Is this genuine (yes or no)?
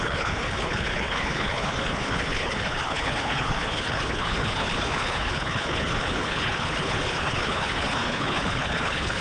no